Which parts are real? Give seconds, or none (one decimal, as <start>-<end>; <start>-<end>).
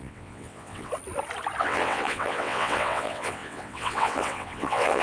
0.9-1.6